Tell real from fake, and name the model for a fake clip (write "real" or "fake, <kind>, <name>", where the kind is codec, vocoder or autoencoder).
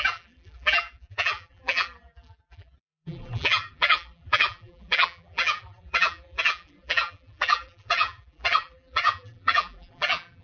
fake, vocoder, BigVGAN v2